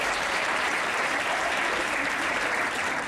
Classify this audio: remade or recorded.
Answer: remade